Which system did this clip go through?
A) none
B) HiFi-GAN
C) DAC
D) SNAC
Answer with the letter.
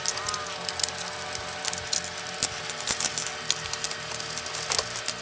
A